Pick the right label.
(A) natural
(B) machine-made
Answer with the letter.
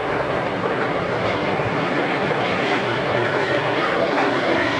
B